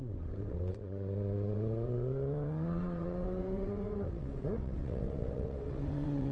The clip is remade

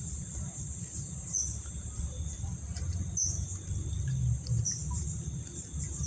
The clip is recorded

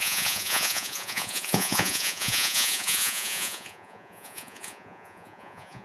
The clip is remade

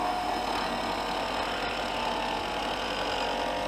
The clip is recorded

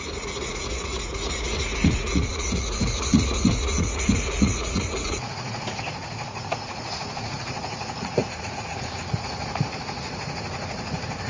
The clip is remade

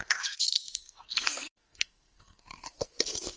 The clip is remade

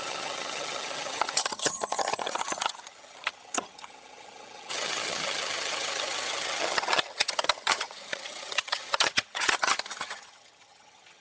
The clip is remade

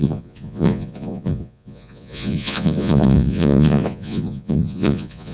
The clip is remade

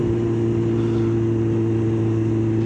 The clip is recorded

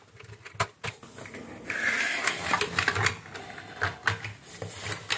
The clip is recorded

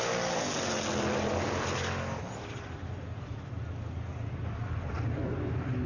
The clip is recorded